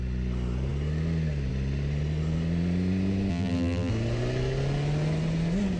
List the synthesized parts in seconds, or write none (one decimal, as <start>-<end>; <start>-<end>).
3.3-3.9